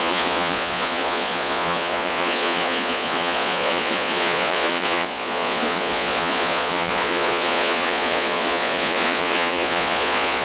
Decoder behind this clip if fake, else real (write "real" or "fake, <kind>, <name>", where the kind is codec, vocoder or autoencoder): fake, vocoder, Vocos